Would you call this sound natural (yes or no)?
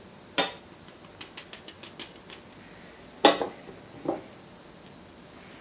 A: yes